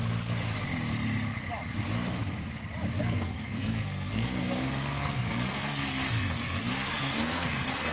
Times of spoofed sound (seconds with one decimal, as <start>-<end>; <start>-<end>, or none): 3.0-7.9